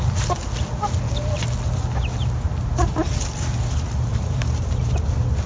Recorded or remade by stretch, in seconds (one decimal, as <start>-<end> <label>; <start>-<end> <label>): 0.0-4.1 recorded; 4.1-4.8 remade; 4.8-5.5 recorded